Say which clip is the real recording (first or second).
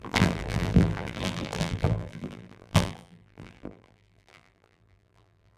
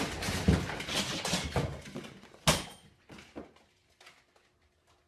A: second